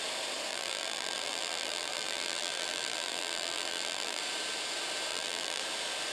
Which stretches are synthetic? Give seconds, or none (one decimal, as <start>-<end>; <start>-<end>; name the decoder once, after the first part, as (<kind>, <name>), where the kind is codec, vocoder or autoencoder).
0.5-4.2 (vocoder, BigVGAN v2); 5.1-5.6